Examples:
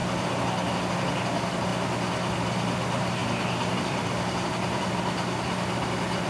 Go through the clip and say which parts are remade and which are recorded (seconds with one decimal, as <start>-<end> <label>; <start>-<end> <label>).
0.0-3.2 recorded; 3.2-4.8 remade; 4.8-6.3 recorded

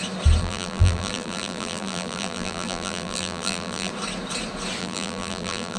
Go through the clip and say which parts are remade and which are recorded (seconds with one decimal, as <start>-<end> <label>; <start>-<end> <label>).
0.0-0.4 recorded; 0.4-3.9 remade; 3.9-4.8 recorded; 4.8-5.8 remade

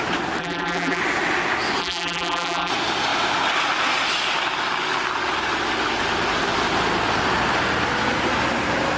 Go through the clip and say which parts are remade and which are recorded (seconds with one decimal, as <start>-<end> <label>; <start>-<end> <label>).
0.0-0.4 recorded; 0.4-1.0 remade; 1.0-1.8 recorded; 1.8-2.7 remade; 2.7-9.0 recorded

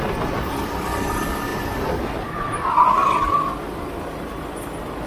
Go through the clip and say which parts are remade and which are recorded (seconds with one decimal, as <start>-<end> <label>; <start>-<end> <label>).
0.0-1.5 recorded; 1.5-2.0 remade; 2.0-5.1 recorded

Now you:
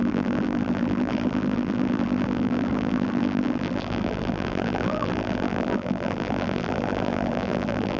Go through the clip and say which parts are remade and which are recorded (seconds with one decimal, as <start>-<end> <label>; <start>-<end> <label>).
0.0-8.0 remade

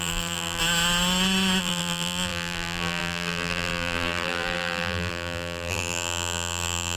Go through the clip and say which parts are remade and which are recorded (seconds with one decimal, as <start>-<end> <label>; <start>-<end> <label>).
0.0-0.6 remade; 0.6-1.6 recorded; 1.6-7.0 remade

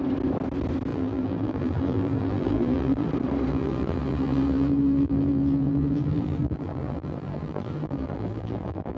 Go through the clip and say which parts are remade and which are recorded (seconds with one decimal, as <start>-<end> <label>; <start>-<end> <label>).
0.0-0.9 recorded; 0.9-3.1 remade; 3.1-3.5 recorded; 3.5-9.0 remade

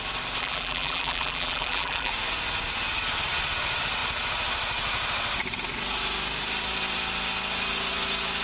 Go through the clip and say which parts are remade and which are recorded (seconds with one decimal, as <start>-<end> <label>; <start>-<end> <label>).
0.0-0.4 recorded; 0.4-2.1 remade; 2.1-8.4 recorded